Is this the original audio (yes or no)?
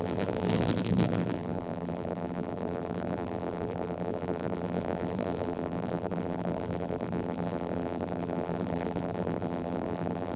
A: no